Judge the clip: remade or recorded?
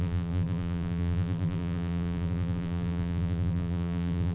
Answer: remade